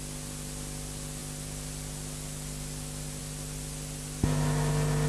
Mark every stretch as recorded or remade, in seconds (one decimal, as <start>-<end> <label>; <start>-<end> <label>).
0.0-5.1 recorded